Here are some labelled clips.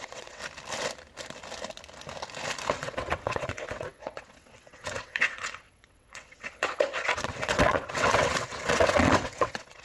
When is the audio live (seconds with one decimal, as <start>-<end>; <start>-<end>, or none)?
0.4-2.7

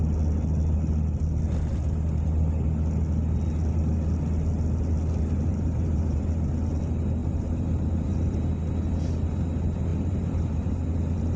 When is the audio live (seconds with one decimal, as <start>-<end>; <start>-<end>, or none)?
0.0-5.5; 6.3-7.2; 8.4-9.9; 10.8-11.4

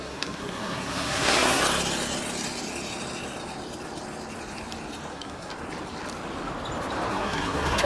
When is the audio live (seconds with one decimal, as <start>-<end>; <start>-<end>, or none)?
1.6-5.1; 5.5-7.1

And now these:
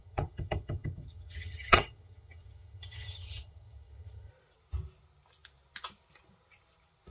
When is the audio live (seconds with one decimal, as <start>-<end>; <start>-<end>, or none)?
4.3-7.1